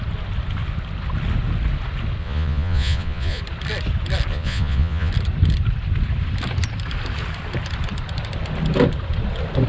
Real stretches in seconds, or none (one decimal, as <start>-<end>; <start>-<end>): 0.0-2.2; 3.4-4.3; 5.1-9.7